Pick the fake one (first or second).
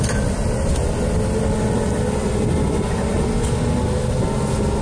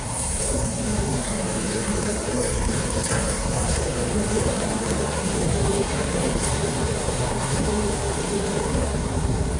second